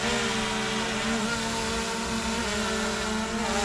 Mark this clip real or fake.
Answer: real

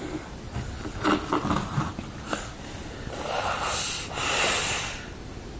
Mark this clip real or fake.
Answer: real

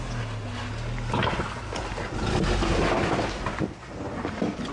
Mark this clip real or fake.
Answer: real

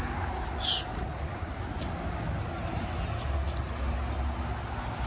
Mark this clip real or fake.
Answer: real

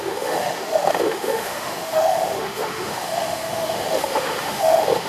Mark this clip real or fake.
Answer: fake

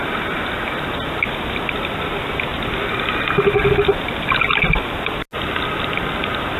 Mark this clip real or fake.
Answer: real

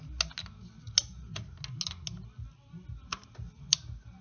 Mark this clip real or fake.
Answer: real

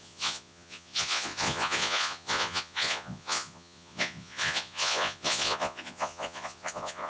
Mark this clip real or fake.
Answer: fake